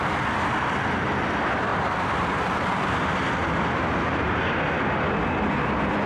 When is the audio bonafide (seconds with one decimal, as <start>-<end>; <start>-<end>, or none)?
0.0-1.7; 3.0-6.1